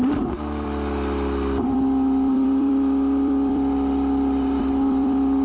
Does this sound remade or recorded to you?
remade